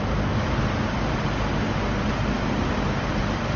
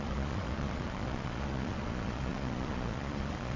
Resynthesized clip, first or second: second